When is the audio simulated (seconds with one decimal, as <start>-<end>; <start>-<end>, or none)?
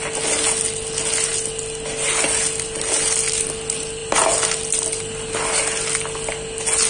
none